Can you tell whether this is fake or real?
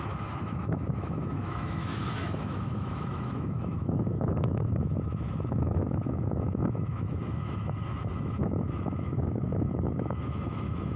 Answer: fake